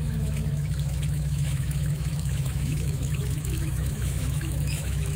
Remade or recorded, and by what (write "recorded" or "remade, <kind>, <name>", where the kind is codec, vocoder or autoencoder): remade, autoencoder, DAC-VAE